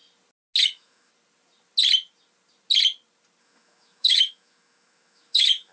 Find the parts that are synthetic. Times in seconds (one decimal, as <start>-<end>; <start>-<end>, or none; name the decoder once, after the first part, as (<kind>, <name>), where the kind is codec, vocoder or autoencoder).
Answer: 0.6-1.1 (autoencoder, DAC-VAE); 3.4-5.7